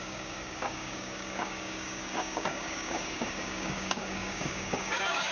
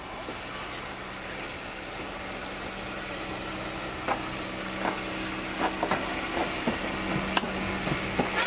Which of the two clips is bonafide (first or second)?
second